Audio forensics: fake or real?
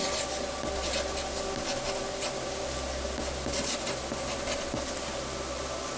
real